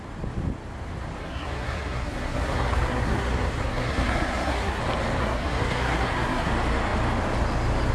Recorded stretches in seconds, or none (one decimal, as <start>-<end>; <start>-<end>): 0.0-1.2; 4.8-5.2; 6.5-7.9